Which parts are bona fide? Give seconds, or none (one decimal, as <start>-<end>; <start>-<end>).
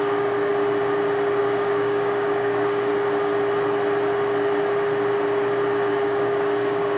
0.5-1.4; 2.9-5.9